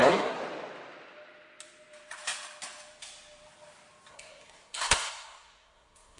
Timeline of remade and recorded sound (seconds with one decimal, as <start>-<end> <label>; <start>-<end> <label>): 0.0-0.4 remade; 0.4-4.1 recorded; 4.1-6.2 remade